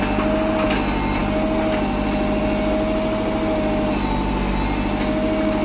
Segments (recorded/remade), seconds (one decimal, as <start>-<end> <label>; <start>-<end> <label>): 0.0-5.6 recorded